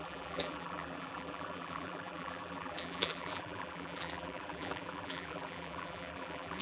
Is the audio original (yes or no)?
no